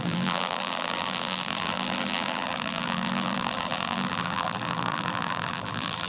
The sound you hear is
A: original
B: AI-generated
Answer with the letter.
B